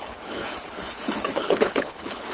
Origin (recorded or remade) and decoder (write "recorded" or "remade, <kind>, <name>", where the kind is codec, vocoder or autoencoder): remade, codec, HILCodec